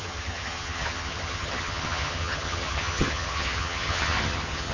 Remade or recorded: remade